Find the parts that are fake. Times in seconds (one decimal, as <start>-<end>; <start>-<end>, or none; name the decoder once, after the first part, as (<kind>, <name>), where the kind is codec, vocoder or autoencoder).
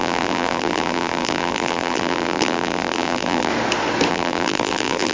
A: 0.0-3.5 (vocoder, BigVGAN v2); 4.1-5.1